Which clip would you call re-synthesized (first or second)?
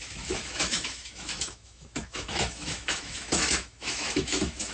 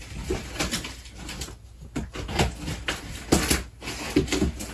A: first